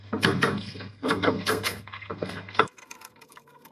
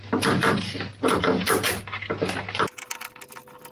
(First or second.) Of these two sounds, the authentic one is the second